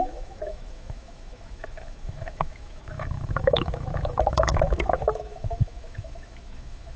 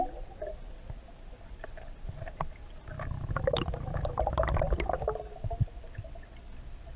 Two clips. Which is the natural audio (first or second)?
second